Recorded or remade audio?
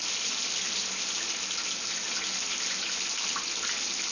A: recorded